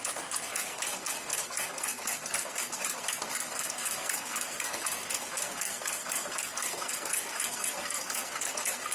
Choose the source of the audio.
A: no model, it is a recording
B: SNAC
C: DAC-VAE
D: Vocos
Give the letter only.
B